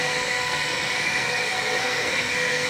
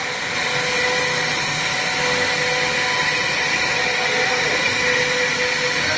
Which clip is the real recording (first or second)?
second